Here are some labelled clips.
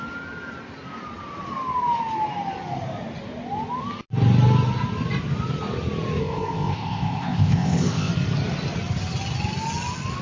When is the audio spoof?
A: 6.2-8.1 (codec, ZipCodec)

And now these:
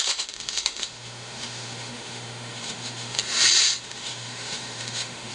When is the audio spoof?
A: 0.0-3.2 (autoencoder, DAC-VAE); 3.8-5.3

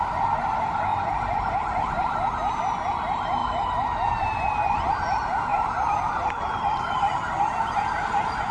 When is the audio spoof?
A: 0.9-2.6 (vocoder, BigVGAN v2); 3.4-4.2; 5.5-7.4

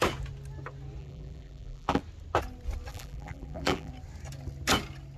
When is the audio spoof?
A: 1.0-2.0 (vocoder, BigVGAN v2); 2.9-3.9

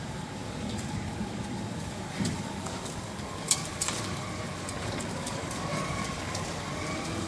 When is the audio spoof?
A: 0.0-7.3 (codec, DAC)

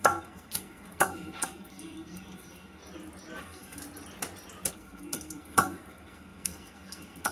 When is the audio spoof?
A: 0.0-2.8 (codec, SNAC); 3.4-3.8; 4.7-7.3

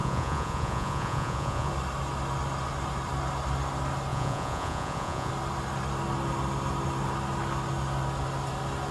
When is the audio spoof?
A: 0.0-1.7 (vocoder, Vocos); 4.1-5.3

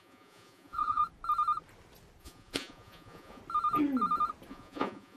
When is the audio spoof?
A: 0.0-1.0 (vocoder, Vocos); 2.2-3.4; 4.5-5.2